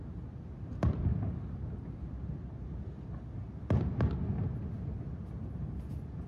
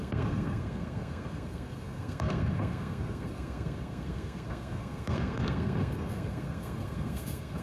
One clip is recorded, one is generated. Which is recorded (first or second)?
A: first